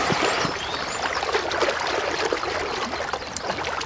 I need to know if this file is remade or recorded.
recorded